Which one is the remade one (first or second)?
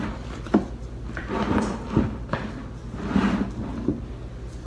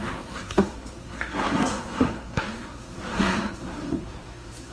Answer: second